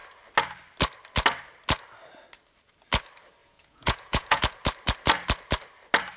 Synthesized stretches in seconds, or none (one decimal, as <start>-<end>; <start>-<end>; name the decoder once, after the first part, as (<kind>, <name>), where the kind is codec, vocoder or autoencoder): 3.4-4.4 (vocoder, Vocos)